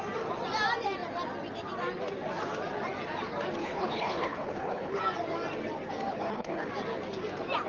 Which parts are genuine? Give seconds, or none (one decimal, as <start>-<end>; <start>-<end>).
0.0-3.6; 5.0-6.1; 6.7-7.7